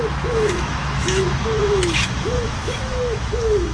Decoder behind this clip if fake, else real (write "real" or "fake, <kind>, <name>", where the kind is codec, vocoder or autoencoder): fake, autoencoder, DAC-VAE